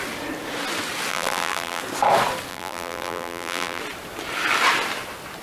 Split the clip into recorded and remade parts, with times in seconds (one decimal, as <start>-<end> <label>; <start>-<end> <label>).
0.0-1.1 recorded; 1.1-1.8 remade; 1.8-2.5 recorded; 2.5-3.8 remade; 3.8-5.4 recorded